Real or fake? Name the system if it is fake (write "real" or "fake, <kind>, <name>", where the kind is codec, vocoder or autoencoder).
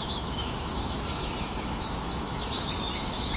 fake, autoencoder, DAC-VAE